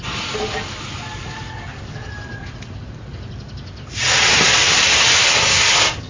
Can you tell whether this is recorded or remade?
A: recorded